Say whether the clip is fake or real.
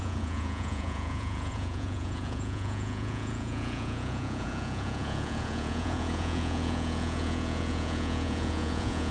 fake